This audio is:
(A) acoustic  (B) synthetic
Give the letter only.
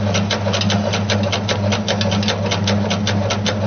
A